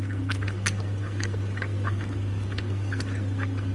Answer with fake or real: fake